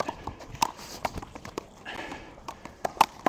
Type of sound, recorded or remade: recorded